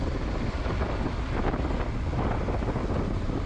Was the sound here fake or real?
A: real